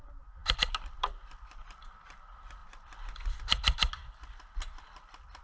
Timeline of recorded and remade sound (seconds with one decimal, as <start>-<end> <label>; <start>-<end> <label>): 0.0-5.4 recorded